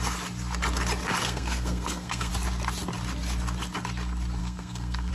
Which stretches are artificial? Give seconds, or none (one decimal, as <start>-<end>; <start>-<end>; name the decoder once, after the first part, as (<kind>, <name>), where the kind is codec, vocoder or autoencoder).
1.2-2.3 (codec, SNAC); 4.4-5.1